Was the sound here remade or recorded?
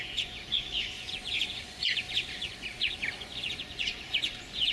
remade